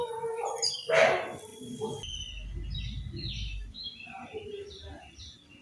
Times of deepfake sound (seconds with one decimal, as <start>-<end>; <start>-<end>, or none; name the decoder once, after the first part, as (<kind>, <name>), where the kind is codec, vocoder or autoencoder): none